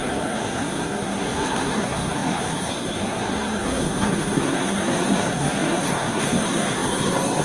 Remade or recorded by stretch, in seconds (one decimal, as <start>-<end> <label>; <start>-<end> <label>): 0.0-7.4 remade